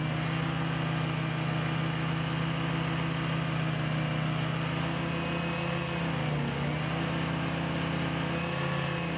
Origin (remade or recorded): recorded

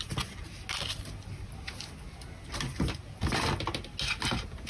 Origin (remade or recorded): recorded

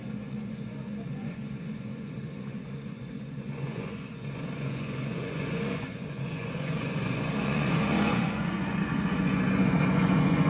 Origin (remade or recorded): remade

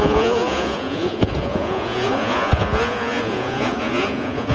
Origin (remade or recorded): remade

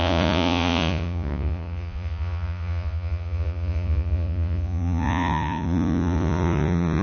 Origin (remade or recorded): remade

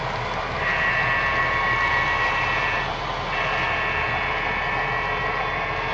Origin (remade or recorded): recorded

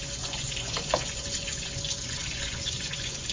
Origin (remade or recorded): remade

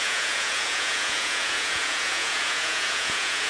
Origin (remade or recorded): remade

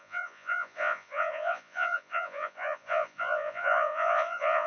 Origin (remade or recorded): remade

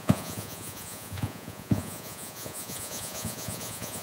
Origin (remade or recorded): remade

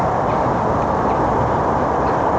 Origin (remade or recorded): recorded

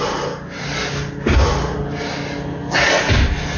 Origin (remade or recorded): recorded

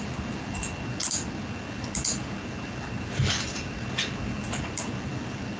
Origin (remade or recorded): recorded